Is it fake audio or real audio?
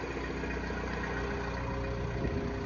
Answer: real